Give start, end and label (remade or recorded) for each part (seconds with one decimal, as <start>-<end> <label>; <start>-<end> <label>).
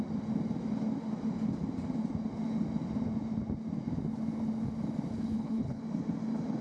0.0-5.1 recorded; 5.1-5.8 remade; 5.8-6.6 recorded